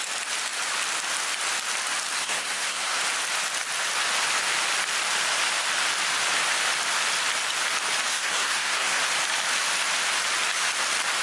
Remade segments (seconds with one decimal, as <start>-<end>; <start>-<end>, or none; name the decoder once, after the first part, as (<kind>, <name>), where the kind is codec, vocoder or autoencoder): 2.2-3.0 (codec, SNAC); 8.1-9.0